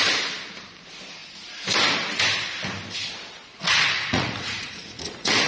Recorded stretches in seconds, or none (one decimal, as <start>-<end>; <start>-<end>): 0.0-3.5